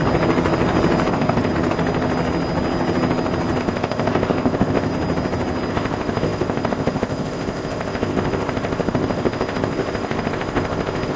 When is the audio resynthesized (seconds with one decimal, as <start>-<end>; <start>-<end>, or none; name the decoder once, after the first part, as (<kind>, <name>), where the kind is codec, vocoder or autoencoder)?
1.1-1.5 (codec, ZipCodec); 3.6-4.9; 5.7-11.2